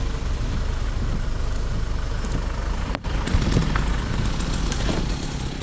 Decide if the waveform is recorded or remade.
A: remade